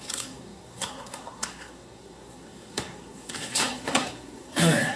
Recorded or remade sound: remade